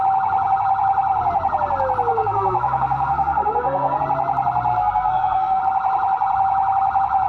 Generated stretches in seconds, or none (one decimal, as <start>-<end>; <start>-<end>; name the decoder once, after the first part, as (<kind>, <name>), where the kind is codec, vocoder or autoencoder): 2.1-4.0 (codec, SNAC); 4.7-5.6